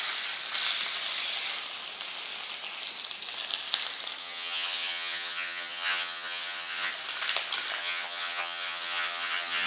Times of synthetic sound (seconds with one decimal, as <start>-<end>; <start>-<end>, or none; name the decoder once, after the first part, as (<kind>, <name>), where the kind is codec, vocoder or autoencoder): 4.2-6.9 (vocoder, HiFi-GAN); 7.8-9.7